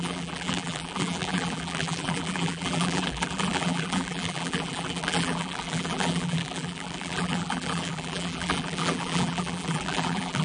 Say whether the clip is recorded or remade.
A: remade